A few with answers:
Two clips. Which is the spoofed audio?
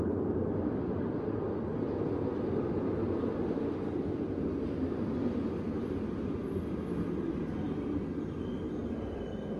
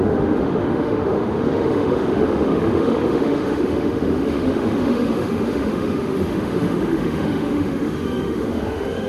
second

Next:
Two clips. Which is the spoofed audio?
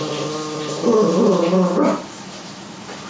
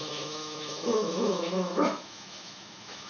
second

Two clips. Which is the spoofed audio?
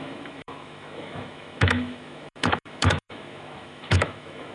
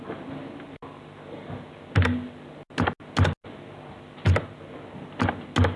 first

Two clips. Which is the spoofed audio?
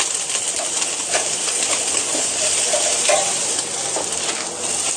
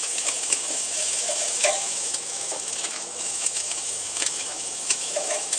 second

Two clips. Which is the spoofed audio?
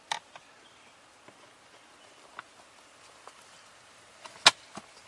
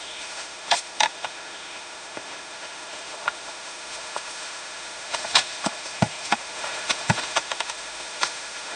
second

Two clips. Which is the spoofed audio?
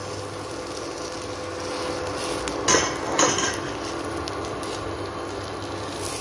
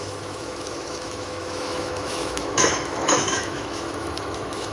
second